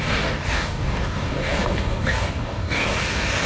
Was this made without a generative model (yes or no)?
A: no